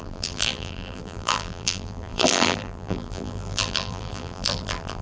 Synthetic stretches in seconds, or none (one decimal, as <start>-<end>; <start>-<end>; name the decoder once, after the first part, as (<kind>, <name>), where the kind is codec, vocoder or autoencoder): 0.0-5.0 (vocoder, BigVGAN v2)